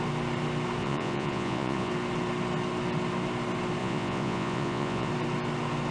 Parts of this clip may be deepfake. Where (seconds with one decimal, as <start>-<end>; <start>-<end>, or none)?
0.8-1.9; 3.8-5.1